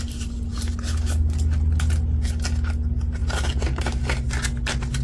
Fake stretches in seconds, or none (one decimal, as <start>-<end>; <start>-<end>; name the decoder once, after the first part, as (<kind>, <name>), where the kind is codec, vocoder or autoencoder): none